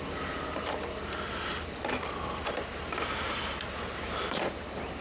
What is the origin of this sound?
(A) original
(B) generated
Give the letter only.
A